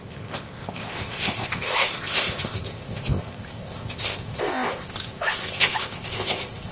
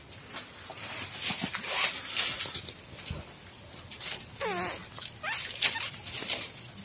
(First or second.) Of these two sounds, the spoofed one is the first